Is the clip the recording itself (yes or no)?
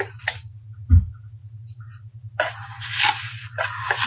yes